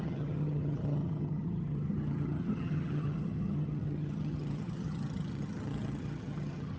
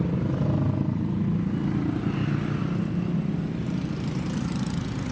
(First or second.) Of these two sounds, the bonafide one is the second